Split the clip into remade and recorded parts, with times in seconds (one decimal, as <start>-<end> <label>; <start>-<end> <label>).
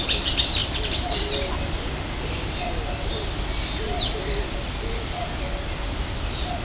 0.0-6.6 recorded